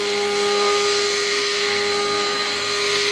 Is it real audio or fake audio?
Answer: fake